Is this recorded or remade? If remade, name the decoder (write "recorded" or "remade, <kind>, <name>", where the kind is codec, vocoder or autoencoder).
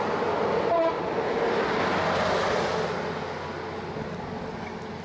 recorded